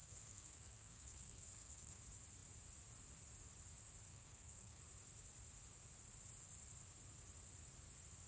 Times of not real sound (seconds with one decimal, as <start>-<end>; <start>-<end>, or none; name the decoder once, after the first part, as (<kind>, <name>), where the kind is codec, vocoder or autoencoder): 0.0-2.0 (codec, SNAC); 4.1-4.8